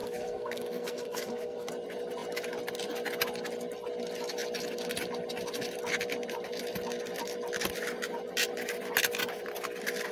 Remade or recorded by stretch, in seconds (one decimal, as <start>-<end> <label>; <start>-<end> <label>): 0.0-1.7 remade; 1.7-10.1 recorded